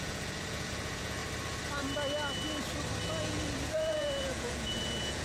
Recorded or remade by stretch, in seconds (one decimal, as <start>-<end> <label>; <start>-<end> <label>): 0.0-1.2 remade; 1.2-3.2 recorded; 3.2-5.2 remade

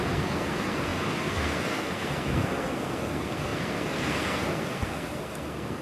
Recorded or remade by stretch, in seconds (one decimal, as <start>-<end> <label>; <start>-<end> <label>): 0.0-5.8 remade

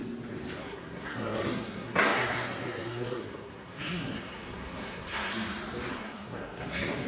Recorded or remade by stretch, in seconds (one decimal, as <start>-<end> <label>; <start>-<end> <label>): 0.0-0.6 recorded; 0.6-5.3 remade; 5.3-5.9 recorded; 5.9-7.1 remade

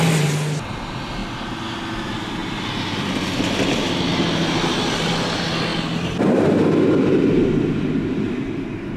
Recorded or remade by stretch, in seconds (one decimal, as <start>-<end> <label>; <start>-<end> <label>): 0.0-9.0 recorded

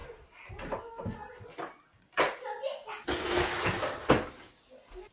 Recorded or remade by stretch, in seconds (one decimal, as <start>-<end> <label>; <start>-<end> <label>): 0.0-5.1 recorded